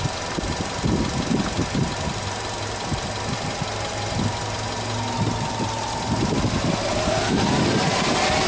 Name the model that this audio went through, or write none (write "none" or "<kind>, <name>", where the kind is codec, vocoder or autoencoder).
none